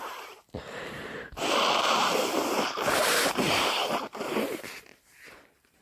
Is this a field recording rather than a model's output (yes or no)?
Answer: no